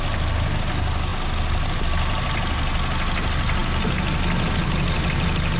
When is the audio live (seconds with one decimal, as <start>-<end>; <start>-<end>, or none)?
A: 0.0-5.6